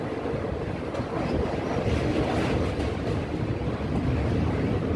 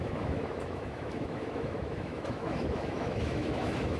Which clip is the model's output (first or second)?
second